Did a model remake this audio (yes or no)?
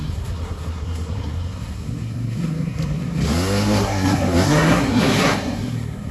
yes